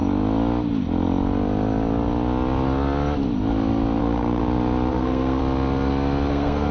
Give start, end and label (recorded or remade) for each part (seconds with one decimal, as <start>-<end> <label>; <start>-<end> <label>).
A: 0.0-4.0 recorded; 4.0-4.4 remade; 4.4-4.9 recorded; 4.9-5.4 remade; 5.4-6.3 recorded; 6.3-6.7 remade